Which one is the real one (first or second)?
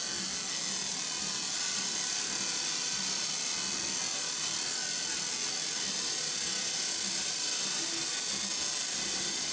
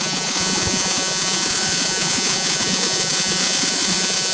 first